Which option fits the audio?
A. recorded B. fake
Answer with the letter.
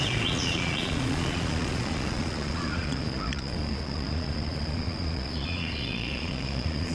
B